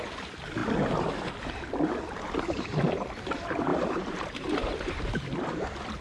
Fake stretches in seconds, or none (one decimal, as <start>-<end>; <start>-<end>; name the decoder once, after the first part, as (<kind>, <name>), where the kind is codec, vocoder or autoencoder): 3.7-5.0 (vocoder, BigVGAN v2)